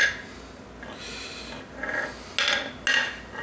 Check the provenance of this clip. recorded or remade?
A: recorded